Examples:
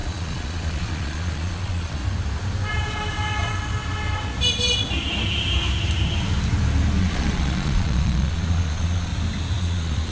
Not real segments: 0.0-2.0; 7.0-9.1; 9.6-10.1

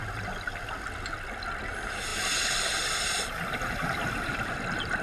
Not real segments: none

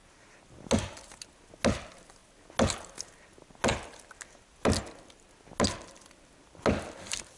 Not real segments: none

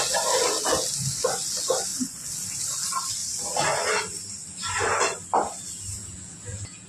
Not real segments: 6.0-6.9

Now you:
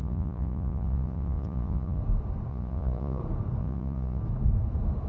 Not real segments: 0.0-2.0; 2.5-3.2; 3.6-4.2